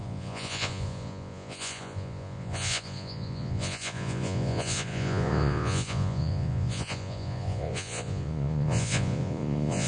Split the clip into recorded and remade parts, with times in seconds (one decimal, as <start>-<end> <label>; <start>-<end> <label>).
0.0-9.9 remade